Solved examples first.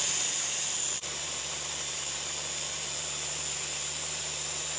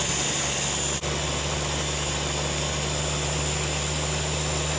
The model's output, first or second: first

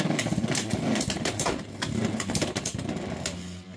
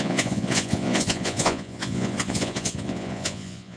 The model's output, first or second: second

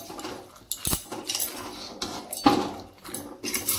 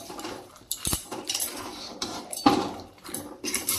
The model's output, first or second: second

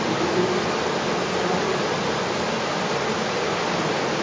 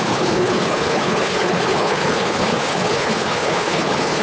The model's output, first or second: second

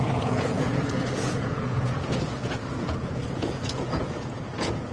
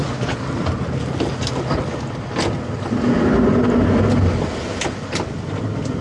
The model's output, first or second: first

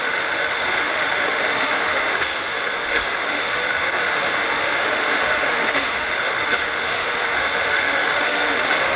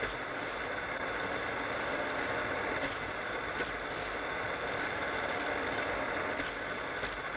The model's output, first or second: first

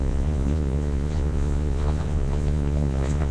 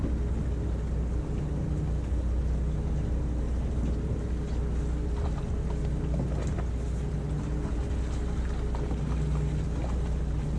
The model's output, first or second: first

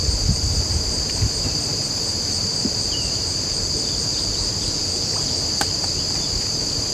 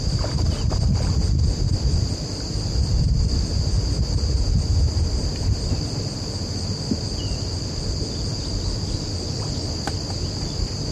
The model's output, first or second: first